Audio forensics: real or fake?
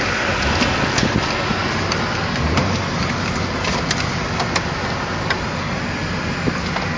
real